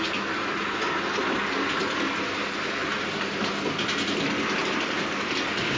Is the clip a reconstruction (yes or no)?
no